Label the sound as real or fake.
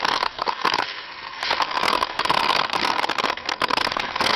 fake